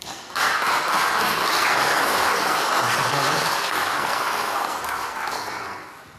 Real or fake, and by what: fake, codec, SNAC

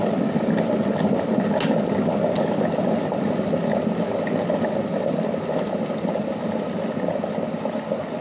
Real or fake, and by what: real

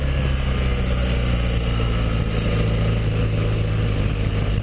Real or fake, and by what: real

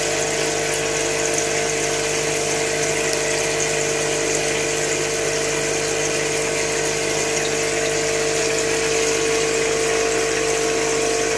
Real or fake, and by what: real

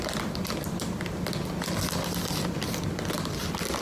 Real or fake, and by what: real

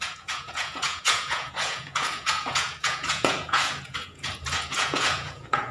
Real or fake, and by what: fake, vocoder, Vocos